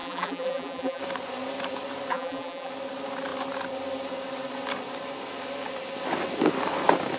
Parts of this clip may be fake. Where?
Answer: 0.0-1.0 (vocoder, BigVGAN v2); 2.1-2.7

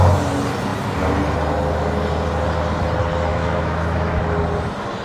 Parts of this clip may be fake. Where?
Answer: 3.3-4.2 (autoencoder, DAC-VAE)